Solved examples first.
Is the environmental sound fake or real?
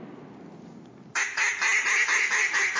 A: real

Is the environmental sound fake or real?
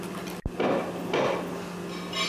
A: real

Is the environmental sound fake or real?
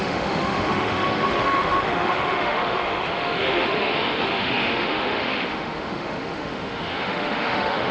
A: fake